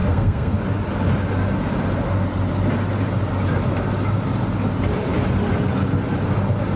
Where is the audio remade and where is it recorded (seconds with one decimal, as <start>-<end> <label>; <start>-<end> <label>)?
0.0-0.6 remade; 0.6-6.8 recorded